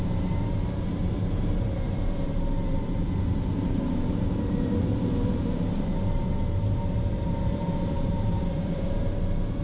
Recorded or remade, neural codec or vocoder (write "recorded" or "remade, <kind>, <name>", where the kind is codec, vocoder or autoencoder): remade, vocoder, BigVGAN v2